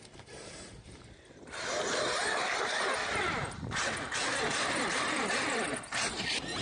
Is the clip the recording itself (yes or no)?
yes